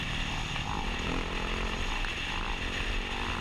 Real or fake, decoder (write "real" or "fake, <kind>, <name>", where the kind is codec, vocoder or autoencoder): real